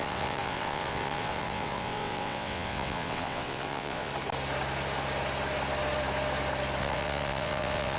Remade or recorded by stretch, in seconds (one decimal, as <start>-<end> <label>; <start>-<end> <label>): 0.0-4.1 remade; 4.1-6.8 recorded; 6.8-8.0 remade